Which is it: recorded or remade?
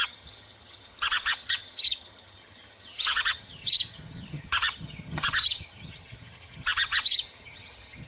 remade